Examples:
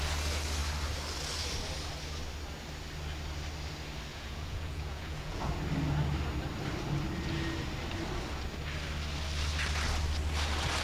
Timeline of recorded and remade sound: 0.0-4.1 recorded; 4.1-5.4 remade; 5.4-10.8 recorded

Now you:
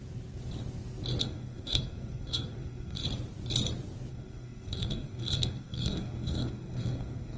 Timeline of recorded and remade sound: 0.0-1.2 recorded; 1.2-3.0 remade; 3.0-4.1 recorded; 4.1-7.4 remade